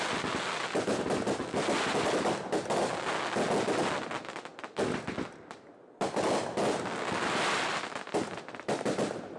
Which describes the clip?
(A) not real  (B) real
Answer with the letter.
B